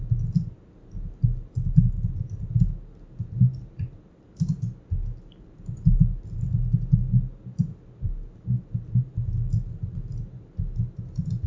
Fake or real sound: real